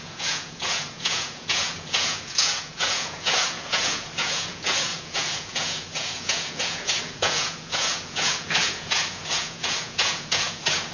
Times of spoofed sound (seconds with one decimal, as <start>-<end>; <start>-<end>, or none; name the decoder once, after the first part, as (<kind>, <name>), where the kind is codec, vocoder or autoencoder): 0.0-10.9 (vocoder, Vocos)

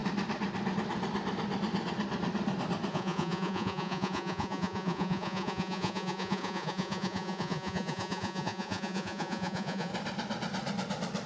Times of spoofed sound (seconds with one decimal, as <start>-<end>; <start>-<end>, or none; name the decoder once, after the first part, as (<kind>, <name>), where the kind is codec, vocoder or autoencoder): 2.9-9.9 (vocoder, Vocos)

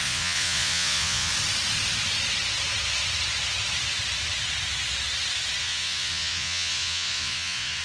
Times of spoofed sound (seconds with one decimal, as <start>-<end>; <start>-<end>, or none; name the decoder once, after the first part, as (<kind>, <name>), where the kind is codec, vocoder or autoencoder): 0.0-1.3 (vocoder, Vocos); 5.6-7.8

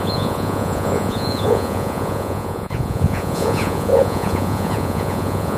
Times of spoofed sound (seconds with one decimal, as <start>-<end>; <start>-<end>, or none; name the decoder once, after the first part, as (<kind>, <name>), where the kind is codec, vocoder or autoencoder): 0.0-5.6 (vocoder, Vocos)

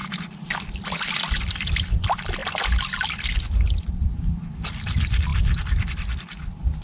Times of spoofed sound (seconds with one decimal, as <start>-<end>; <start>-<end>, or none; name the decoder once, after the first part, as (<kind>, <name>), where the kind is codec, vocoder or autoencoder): none